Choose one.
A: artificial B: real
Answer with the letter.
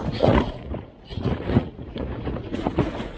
A